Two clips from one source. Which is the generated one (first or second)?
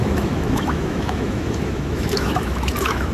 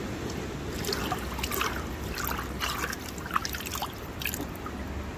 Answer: first